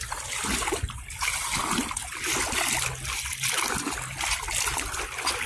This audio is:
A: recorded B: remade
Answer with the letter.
A